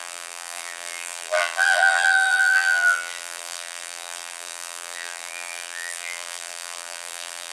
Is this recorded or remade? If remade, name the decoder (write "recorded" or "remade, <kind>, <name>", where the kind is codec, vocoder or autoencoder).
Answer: remade, vocoder, BigVGAN v2